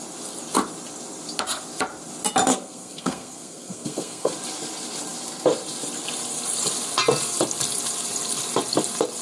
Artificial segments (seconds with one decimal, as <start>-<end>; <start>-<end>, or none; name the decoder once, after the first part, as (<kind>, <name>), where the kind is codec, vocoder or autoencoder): 2.5-4.3 (codec, SNAC)